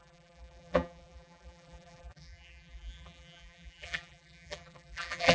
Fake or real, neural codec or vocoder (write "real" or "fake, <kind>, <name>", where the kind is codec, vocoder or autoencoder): fake, vocoder, BigVGAN v2